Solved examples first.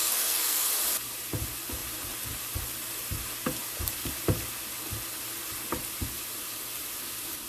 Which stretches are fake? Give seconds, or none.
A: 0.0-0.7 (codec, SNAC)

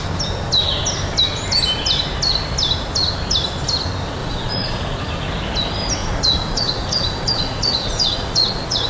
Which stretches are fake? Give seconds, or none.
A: 4.2-5.0 (vocoder, Vocos); 6.0-8.9

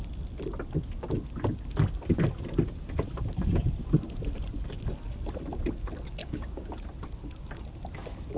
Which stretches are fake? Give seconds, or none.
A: 6.2-6.7 (codec, DAC)

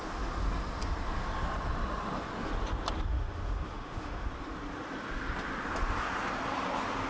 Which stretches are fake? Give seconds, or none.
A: 3.1-4.3 (autoencoder, DAC-VAE)

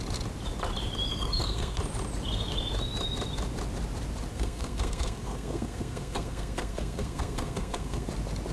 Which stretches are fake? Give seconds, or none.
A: 1.1-1.8 (codec, SNAC); 4.3-8.1